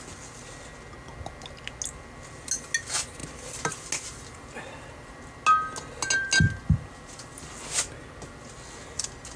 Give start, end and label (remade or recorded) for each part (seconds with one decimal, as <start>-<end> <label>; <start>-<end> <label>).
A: 0.0-9.4 recorded

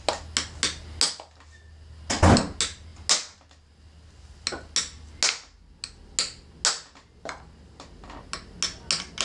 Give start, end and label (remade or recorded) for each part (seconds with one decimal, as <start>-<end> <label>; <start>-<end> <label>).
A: 0.0-9.2 recorded

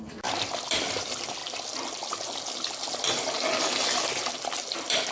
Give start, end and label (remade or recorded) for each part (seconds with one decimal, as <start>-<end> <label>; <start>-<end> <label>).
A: 0.0-1.4 remade; 1.4-2.1 recorded; 2.1-5.1 remade

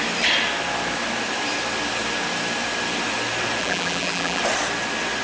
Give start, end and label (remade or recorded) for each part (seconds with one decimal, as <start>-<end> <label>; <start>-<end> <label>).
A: 0.0-3.6 recorded; 3.6-4.4 remade; 4.4-5.2 recorded

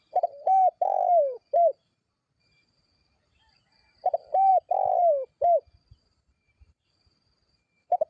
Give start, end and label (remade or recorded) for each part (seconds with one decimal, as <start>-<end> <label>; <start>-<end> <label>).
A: 0.0-4.5 remade; 4.5-6.0 recorded; 6.0-8.1 remade

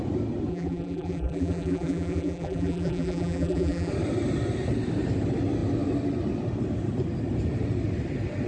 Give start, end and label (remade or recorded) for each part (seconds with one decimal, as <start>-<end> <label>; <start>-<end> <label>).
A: 0.0-0.5 recorded; 0.5-3.9 remade; 3.9-8.5 recorded

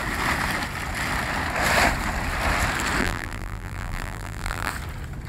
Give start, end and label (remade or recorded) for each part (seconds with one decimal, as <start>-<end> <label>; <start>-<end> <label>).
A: 0.0-3.0 recorded; 3.0-4.7 remade; 4.7-5.3 recorded